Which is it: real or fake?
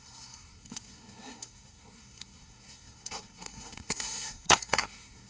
fake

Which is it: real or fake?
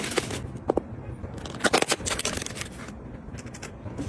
real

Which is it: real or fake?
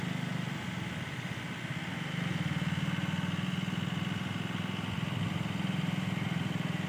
real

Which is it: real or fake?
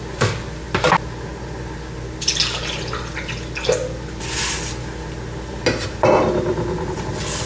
real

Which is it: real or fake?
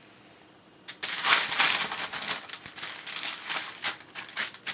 real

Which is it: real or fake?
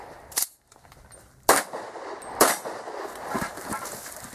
real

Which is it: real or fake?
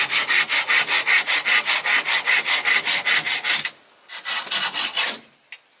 real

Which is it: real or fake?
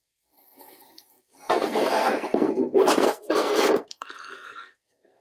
fake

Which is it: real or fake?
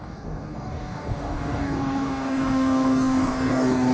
fake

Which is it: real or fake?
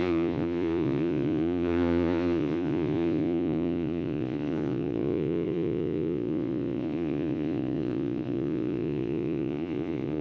fake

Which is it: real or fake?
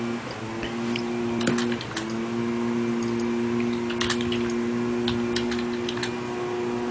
real